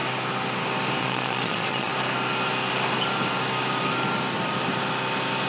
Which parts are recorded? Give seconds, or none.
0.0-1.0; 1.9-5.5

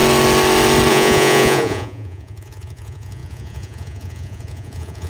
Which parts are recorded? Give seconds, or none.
0.0-0.9